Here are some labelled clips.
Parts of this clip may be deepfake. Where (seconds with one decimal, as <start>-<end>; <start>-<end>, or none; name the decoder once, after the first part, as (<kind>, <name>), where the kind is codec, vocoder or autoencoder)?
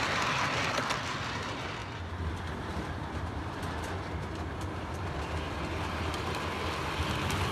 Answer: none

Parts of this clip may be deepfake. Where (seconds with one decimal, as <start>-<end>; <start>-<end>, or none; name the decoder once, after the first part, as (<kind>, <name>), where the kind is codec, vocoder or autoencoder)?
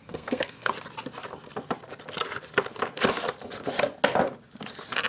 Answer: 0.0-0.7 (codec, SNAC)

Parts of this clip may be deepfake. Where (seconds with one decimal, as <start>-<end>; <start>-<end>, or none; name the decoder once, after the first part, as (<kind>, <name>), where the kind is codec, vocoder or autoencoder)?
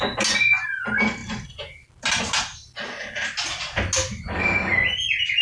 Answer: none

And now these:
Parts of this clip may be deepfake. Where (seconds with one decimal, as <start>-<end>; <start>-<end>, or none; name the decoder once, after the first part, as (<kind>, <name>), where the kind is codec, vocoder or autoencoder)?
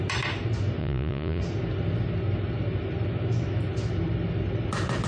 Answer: 0.8-1.4 (vocoder, Vocos)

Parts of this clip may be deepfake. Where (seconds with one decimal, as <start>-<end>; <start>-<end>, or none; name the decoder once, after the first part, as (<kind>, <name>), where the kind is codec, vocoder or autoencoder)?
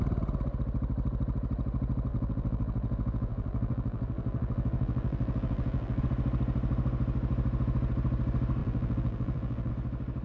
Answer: 2.1-6.0 (vocoder, BigVGAN v2); 8.6-9.7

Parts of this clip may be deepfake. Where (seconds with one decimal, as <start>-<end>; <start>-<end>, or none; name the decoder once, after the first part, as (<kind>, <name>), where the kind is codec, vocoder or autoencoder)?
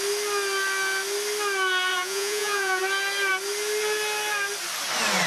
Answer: 1.9-2.8 (vocoder, Vocos)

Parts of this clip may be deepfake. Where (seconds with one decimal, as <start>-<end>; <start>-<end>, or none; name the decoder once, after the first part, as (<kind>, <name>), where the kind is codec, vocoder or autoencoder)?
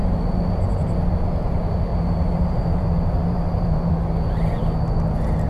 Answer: 1.9-3.9 (vocoder, BigVGAN v2)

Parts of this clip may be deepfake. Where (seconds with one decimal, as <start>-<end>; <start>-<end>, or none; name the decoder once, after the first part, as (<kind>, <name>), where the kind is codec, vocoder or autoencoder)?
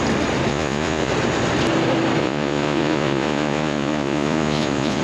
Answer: 0.5-1.1 (vocoder, Vocos); 2.2-5.0